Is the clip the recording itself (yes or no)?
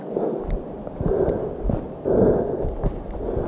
yes